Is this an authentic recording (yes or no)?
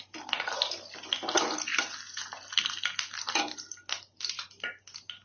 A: yes